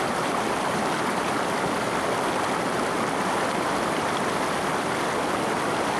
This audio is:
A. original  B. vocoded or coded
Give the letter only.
A